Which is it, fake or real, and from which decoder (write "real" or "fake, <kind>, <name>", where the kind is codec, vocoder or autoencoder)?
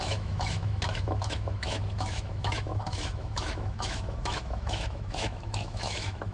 fake, autoencoder, DAC-VAE